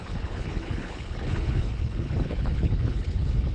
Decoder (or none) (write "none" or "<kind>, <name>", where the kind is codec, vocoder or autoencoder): codec, HILCodec